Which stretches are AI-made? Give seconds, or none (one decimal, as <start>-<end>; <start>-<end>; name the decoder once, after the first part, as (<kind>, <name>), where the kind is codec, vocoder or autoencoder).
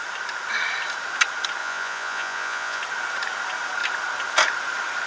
1.6-2.8 (vocoder, Vocos)